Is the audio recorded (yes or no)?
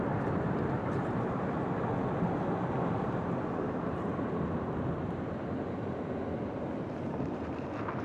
yes